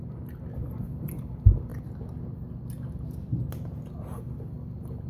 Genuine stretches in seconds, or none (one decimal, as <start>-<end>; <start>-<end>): 0.0-5.1